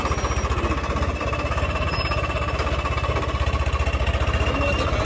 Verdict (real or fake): real